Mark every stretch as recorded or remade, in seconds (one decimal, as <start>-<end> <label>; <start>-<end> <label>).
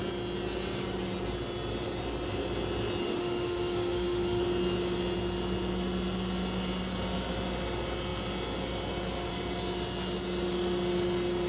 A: 0.0-3.0 recorded; 3.0-4.4 remade; 4.4-11.5 recorded